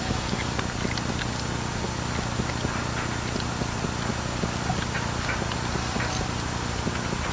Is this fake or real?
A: real